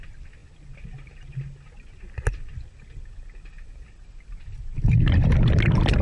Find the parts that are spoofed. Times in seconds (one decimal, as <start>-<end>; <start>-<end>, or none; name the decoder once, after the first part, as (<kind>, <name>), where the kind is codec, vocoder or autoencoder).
none